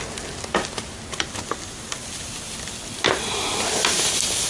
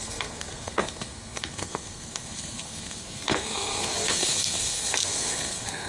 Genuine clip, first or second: first